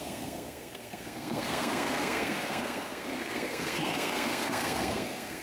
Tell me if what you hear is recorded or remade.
remade